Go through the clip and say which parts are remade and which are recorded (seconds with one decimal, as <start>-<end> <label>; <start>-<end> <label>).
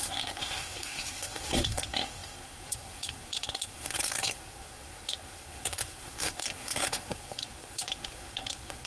0.0-8.9 remade